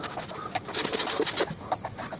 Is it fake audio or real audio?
real